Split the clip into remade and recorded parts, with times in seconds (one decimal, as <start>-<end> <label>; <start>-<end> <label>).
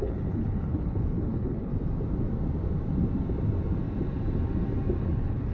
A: 0.0-1.7 remade; 1.7-5.0 recorded; 5.0-5.5 remade